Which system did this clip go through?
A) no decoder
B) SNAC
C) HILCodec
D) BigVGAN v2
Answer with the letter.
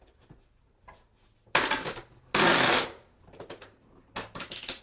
A